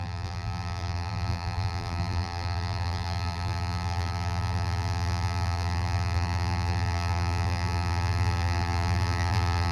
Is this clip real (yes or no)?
no